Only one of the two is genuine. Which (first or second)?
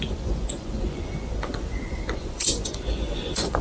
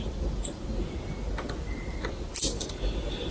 second